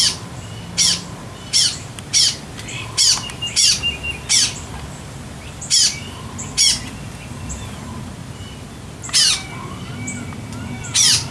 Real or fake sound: real